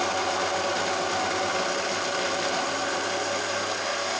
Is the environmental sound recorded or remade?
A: recorded